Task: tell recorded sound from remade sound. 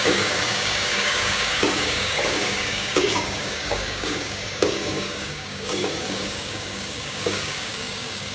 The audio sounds remade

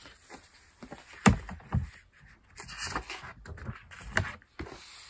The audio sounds recorded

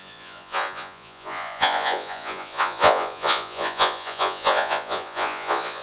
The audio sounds remade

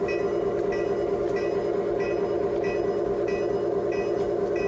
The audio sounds recorded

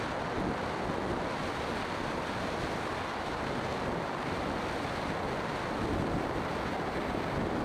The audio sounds recorded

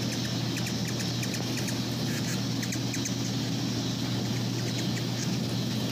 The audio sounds recorded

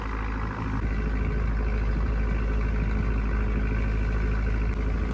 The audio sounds recorded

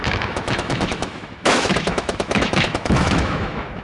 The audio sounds remade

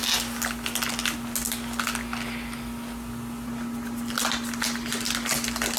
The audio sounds recorded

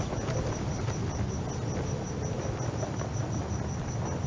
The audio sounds recorded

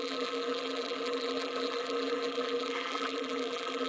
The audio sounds remade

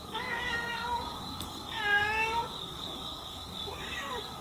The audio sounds remade